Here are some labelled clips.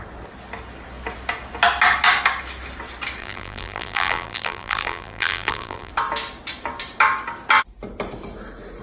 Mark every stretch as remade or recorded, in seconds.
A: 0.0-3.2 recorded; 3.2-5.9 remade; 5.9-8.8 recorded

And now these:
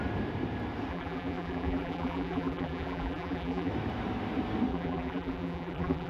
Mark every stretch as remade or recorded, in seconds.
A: 0.0-0.9 recorded; 0.9-3.7 remade; 3.7-4.7 recorded; 4.7-6.1 remade

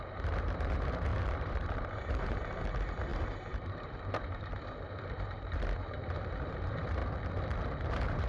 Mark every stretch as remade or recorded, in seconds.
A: 0.0-7.0 remade; 7.0-7.8 recorded; 7.8-8.3 remade

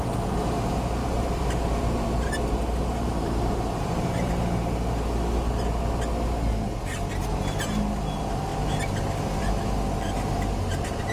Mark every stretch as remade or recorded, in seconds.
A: 0.0-1.0 recorded; 1.0-4.3 remade; 4.3-11.1 recorded

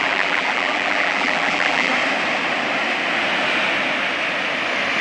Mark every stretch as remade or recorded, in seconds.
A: 0.0-1.9 remade; 1.9-5.0 recorded

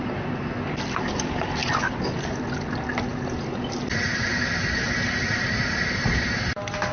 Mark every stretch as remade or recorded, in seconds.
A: 0.0-6.9 recorded